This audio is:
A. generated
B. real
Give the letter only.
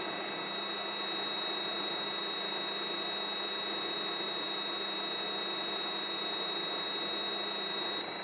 B